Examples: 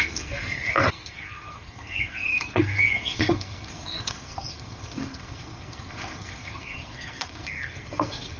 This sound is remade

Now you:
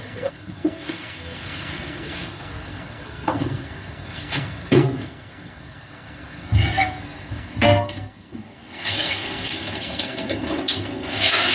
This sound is remade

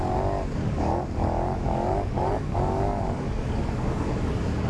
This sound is remade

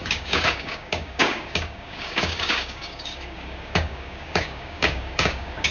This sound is remade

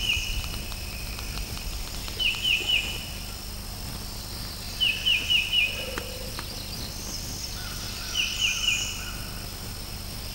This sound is remade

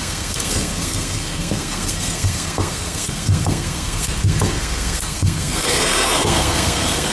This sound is remade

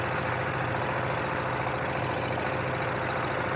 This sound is recorded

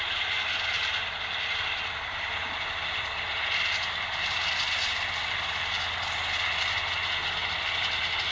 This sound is recorded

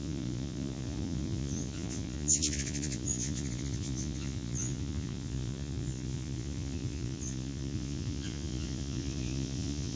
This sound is remade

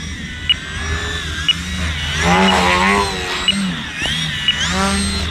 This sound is recorded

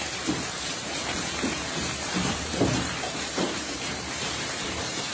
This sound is remade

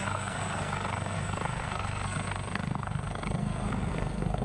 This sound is remade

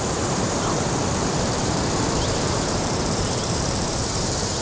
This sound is remade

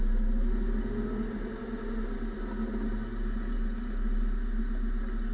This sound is recorded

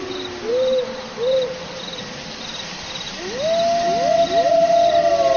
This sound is recorded